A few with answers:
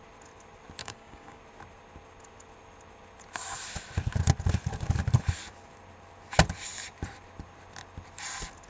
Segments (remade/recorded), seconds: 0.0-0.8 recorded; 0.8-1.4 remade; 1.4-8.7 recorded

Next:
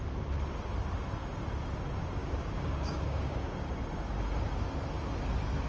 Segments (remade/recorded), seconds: 0.0-2.2 recorded; 2.2-3.5 remade; 3.5-5.7 recorded